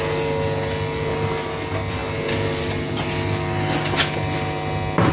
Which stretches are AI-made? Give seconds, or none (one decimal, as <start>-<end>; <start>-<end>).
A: none